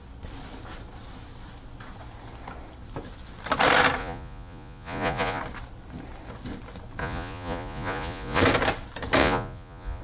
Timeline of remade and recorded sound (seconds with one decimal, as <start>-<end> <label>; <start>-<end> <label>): 0.0-4.0 recorded; 4.0-5.4 remade; 5.4-7.0 recorded; 7.0-8.4 remade; 8.4-9.2 recorded; 9.2-10.0 remade